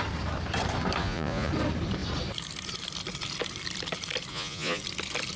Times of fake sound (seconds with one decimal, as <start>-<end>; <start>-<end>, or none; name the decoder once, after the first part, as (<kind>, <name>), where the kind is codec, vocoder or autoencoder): 1.0-1.5 (vocoder, Vocos); 4.3-4.8